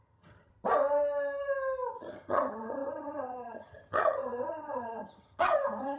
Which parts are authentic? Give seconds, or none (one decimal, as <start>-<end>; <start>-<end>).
0.5-1.9